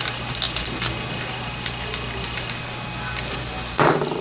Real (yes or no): yes